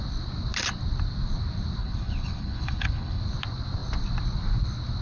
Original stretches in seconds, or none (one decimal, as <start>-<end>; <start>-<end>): 0.0-1.8; 3.2-5.0